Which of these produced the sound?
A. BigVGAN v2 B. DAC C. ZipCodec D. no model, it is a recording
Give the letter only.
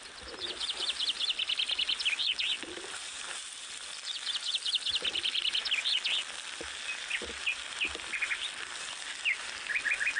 A